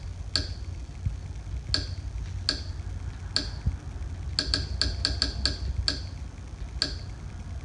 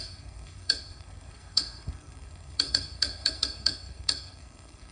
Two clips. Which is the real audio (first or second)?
first